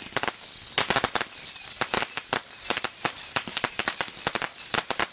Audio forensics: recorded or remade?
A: recorded